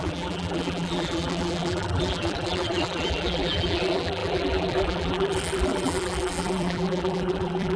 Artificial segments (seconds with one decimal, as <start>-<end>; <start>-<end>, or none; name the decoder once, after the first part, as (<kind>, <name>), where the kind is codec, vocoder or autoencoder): 0.0-7.8 (vocoder, BigVGAN v2)